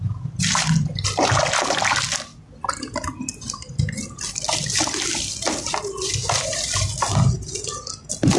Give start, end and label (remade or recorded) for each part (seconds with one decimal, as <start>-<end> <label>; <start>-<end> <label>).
0.0-8.4 recorded